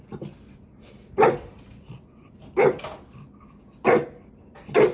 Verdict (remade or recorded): recorded